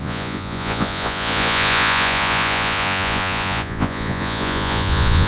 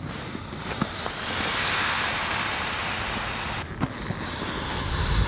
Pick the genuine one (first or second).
second